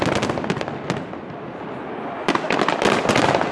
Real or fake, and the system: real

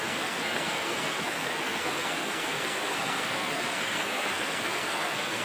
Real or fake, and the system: fake, codec, SNAC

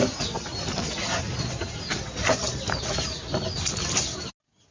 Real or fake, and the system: real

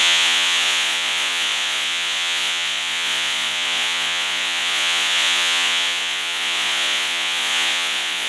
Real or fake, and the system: fake, vocoder, Vocos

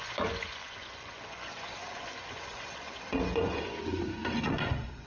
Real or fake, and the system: fake, vocoder, Vocos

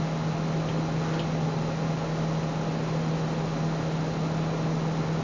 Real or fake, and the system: real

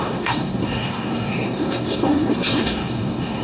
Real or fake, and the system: fake, codec, SNAC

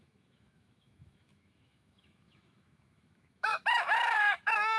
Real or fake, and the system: fake, autoencoder, DAC-VAE